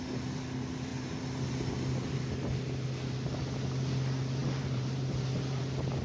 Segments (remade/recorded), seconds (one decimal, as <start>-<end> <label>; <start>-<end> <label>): 0.0-4.4 recorded; 4.4-5.6 remade; 5.6-6.0 recorded